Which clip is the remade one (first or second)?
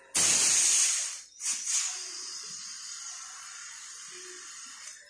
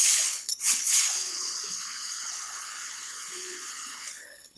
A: second